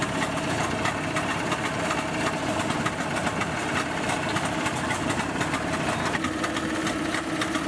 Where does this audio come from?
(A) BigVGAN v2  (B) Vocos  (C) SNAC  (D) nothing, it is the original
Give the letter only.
D